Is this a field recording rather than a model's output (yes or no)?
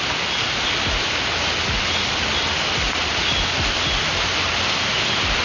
yes